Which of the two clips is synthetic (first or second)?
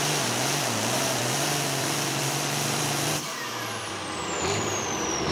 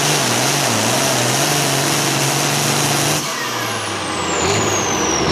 first